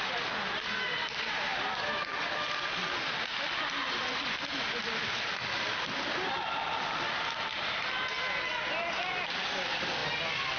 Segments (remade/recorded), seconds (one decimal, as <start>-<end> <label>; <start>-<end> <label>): 0.0-10.6 recorded